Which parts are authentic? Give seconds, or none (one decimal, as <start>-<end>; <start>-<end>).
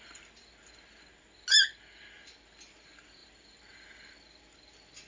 0.0-5.1